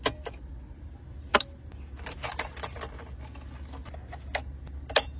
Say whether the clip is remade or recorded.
recorded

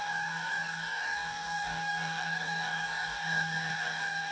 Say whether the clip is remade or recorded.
remade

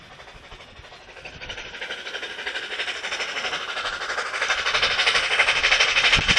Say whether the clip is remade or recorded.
recorded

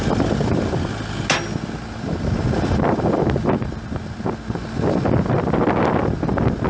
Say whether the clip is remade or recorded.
recorded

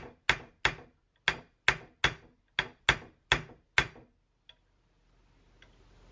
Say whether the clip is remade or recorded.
recorded